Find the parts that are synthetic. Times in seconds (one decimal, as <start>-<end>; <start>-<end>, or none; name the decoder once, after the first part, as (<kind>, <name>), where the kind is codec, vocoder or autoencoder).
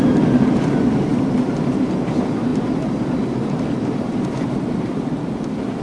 none